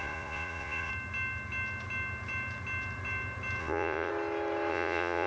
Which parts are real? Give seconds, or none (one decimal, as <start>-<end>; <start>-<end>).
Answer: 0.9-3.6; 4.1-4.7